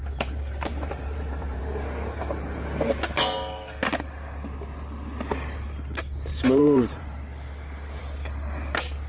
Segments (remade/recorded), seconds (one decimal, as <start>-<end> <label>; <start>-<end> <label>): 0.0-1.6 remade; 1.6-6.3 recorded; 6.3-7.2 remade; 7.2-9.1 recorded